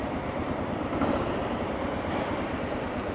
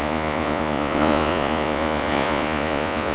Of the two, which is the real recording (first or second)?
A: first